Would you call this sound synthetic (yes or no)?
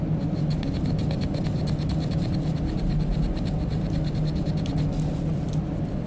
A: no